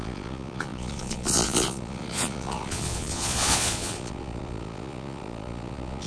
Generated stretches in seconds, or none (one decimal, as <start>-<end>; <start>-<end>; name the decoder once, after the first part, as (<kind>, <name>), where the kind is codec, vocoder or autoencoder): 0.0-6.1 (vocoder, Vocos)